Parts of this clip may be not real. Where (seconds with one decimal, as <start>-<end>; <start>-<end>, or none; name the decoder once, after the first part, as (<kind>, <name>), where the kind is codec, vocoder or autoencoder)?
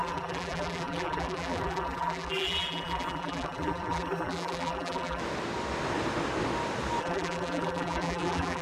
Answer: 0.0-5.2 (vocoder, BigVGAN v2); 7.0-8.6